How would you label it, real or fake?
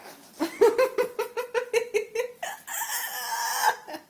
real